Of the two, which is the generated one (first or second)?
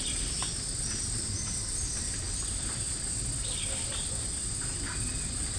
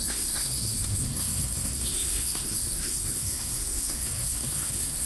second